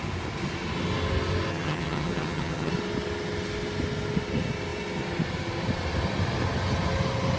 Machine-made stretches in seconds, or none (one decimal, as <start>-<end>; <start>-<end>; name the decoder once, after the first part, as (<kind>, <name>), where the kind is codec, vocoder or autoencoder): 1.5-2.7 (vocoder, HiFi-GAN)